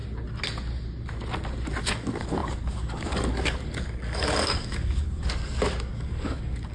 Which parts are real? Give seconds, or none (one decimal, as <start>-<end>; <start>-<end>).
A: 0.0-1.8